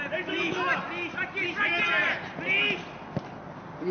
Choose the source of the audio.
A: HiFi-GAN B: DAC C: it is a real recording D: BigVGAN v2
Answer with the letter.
C